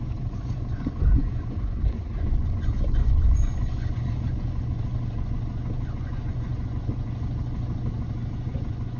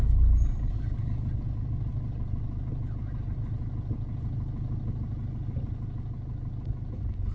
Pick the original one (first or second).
second